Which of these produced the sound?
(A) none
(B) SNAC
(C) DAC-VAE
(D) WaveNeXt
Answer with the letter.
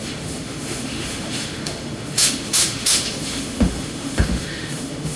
C